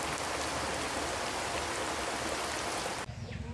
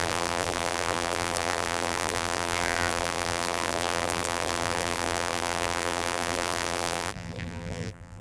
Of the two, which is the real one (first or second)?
first